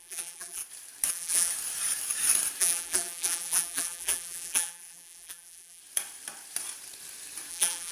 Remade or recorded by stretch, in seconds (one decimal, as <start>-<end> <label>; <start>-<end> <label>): 0.0-0.6 remade; 0.6-1.1 recorded; 1.1-1.5 remade; 1.5-2.6 recorded; 2.6-5.8 remade; 5.8-7.5 recorded; 7.5-7.9 remade

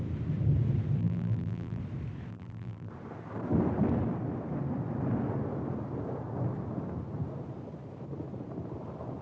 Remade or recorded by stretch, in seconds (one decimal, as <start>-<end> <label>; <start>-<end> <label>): 0.0-1.0 recorded; 1.0-1.8 remade; 1.8-2.3 recorded; 2.3-2.9 remade; 2.9-9.2 recorded

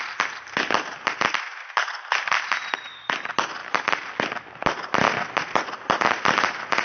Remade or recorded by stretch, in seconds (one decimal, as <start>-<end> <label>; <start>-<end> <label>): 0.0-6.8 recorded

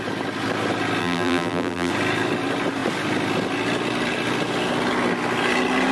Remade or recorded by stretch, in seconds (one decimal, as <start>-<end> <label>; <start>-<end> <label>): 0.0-1.0 recorded; 1.0-1.9 remade; 1.9-5.9 recorded

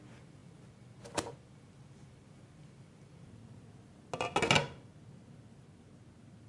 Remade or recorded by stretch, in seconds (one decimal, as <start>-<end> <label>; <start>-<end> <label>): 0.0-6.5 recorded

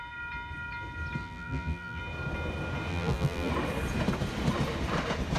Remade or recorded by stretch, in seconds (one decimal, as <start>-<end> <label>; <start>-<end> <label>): 0.0-1.2 recorded; 1.2-2.0 remade; 2.0-2.9 recorded; 2.9-3.5 remade; 3.5-5.4 recorded

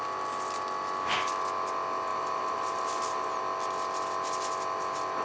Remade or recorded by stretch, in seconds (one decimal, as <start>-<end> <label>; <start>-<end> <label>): 0.0-2.1 recorded; 2.1-3.4 remade; 3.4-5.2 recorded